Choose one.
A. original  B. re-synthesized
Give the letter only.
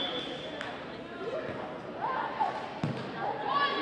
A